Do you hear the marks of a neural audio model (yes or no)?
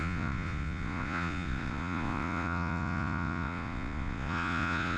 yes